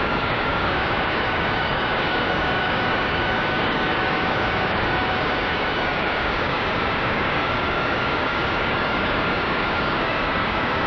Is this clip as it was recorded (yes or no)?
no